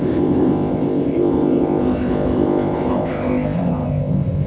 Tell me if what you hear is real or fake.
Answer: fake